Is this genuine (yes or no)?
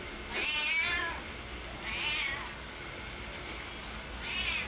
yes